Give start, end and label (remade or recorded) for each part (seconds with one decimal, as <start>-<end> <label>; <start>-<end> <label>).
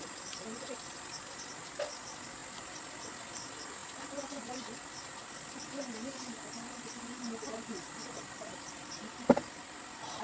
0.0-2.4 recorded; 2.4-2.9 remade; 2.9-8.0 recorded; 8.0-8.9 remade; 8.9-10.2 recorded